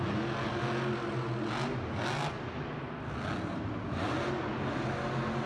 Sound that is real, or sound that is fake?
real